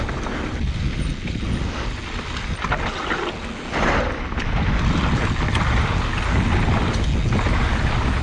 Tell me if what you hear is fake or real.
real